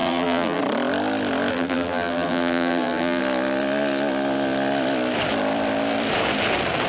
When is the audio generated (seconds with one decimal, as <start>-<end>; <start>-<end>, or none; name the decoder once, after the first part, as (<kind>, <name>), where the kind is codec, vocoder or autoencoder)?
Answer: 0.0-0.6 (vocoder, BigVGAN v2); 1.5-3.2